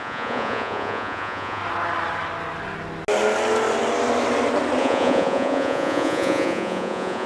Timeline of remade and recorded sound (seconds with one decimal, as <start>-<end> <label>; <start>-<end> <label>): 0.0-1.6 remade; 1.6-4.8 recorded; 4.8-7.3 remade